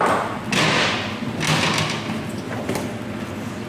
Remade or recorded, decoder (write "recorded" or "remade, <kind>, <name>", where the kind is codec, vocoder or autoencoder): recorded